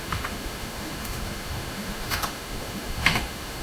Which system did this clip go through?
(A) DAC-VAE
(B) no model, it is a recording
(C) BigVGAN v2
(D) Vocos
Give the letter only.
A